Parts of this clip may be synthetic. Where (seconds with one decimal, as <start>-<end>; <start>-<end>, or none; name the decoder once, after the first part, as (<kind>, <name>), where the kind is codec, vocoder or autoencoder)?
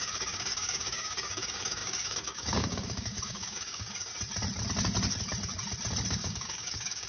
0.0-4.1 (codec, DAC); 6.1-7.1